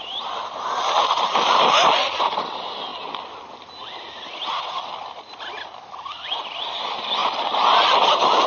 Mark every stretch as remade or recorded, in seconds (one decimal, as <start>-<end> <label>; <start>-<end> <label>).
0.0-8.5 recorded

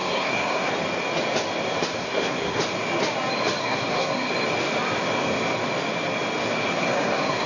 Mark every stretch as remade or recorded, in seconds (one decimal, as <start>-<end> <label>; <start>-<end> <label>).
0.0-0.7 remade; 0.7-2.0 recorded; 2.0-2.6 remade; 2.6-3.6 recorded; 3.6-4.3 remade; 4.3-6.7 recorded; 6.7-7.5 remade

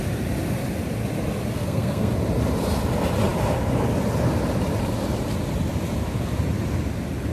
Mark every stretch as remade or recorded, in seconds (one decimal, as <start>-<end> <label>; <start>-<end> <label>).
0.0-1.5 recorded; 1.5-2.1 remade; 2.1-7.3 recorded

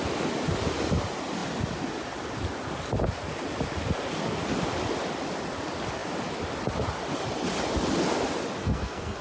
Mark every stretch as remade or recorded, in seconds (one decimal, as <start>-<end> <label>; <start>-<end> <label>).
0.0-8.6 recorded; 8.6-9.2 remade